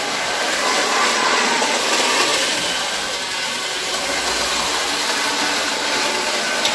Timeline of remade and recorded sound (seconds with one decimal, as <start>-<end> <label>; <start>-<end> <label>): 0.0-0.8 recorded; 0.8-1.8 remade; 1.8-6.7 recorded